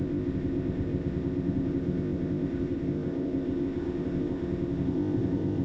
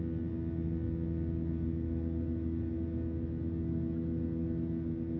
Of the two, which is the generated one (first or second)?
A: first